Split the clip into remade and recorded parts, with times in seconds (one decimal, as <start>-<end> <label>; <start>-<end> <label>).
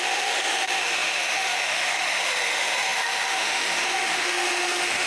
0.0-5.1 remade